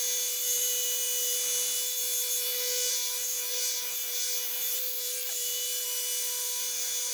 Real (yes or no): yes